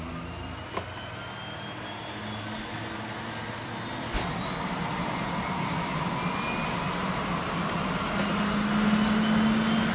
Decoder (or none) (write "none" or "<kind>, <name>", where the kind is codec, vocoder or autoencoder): none